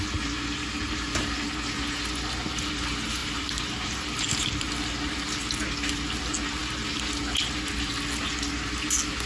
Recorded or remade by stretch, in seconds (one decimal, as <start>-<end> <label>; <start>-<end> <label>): 0.0-3.2 recorded; 3.2-4.7 remade; 4.7-9.3 recorded